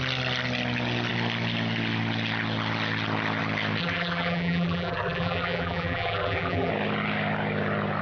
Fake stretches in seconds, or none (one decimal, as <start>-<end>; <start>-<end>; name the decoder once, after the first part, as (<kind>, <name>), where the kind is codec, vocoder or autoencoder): 3.8-6.7 (vocoder, BigVGAN v2)